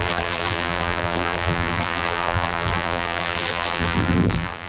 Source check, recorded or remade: remade